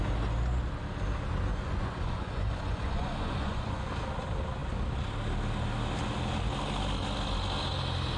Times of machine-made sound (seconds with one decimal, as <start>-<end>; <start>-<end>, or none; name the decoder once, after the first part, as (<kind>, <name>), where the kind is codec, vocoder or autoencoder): 1.5-3.9 (vocoder, Vocos)

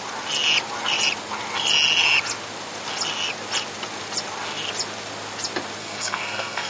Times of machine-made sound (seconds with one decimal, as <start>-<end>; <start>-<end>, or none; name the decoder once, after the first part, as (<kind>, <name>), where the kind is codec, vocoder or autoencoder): 5.8-6.7 (codec, SNAC)

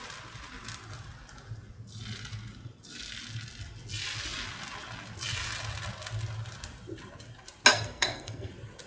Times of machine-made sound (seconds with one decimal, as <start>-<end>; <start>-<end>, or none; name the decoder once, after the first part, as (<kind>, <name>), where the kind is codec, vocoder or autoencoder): 7.7-8.5 (codec, SNAC)

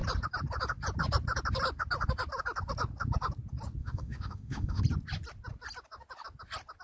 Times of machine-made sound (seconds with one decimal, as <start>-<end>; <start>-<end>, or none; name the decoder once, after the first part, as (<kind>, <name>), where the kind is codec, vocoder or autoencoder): 3.8-4.8 (autoencoder, DAC-VAE)

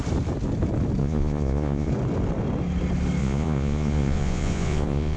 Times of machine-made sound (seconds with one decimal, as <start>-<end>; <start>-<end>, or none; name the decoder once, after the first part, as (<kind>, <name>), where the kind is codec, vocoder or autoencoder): 1.0-1.9 (vocoder, Vocos); 3.2-5.2

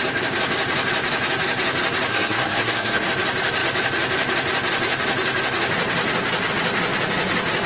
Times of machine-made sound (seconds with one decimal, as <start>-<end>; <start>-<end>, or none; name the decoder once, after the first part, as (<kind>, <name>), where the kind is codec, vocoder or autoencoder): 2.1-3.1 (codec, SNAC)